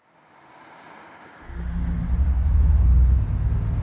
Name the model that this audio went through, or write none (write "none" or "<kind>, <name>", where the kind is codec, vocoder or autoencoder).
none